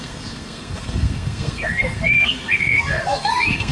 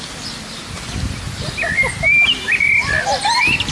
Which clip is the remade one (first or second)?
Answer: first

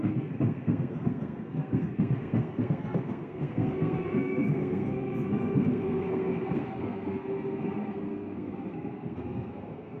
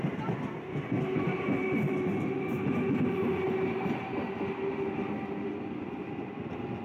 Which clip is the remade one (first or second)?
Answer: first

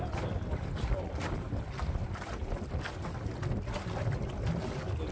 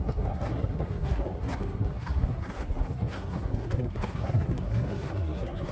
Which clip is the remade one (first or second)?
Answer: second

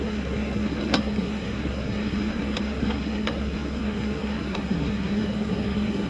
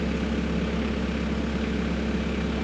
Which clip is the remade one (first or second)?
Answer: first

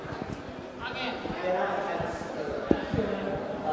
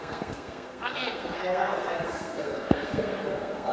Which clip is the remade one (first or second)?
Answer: second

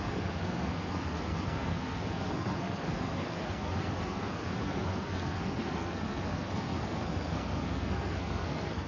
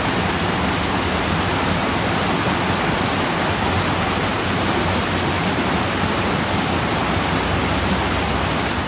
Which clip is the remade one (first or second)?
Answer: first